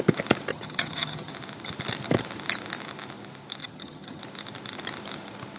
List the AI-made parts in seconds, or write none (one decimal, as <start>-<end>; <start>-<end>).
0.5-1.3; 3.6-4.2